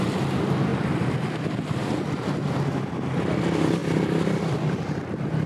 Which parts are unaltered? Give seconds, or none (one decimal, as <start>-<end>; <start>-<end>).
0.0-5.5